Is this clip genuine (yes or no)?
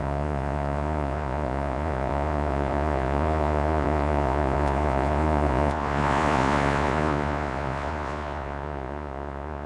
no